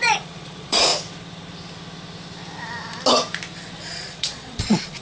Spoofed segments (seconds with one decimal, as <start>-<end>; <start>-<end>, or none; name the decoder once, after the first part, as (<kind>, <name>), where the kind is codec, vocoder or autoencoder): 0.0-0.9 (vocoder, Vocos); 3.9-5.0